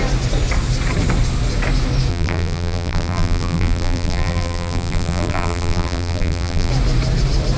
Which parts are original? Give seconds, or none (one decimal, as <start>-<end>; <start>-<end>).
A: 0.0-2.1; 6.7-7.6